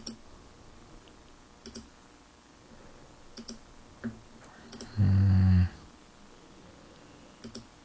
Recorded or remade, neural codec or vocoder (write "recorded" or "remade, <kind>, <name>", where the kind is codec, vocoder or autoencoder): recorded